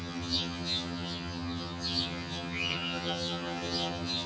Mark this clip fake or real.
fake